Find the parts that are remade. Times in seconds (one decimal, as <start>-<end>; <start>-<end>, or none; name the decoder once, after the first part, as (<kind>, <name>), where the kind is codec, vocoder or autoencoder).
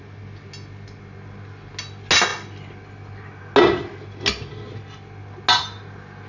none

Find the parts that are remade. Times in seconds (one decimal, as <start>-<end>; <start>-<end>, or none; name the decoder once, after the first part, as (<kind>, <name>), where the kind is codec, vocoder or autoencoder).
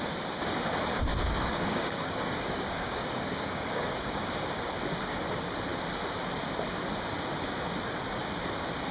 1.1-4.3 (codec, DAC)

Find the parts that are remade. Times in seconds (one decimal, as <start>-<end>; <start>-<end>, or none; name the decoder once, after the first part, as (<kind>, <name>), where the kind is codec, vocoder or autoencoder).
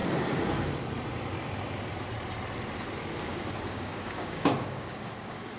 3.2-5.6 (codec, DAC)